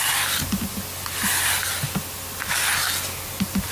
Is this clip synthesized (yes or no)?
no